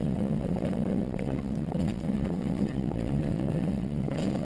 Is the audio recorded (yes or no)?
no